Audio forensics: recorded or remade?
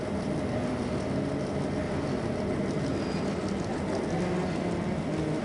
recorded